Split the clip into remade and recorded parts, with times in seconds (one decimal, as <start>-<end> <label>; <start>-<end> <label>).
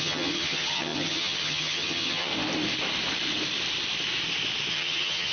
0.0-2.3 remade; 2.3-4.7 recorded; 4.7-5.3 remade